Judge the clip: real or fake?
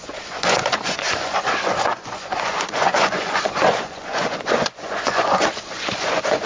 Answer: fake